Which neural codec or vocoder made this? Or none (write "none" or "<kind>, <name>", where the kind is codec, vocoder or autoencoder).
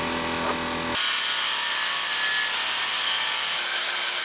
none